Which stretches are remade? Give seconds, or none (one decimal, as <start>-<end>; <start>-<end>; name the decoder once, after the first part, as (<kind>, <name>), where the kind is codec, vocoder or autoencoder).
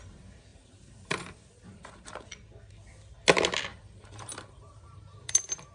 0.5-2.2 (vocoder, BigVGAN v2); 3.7-5.3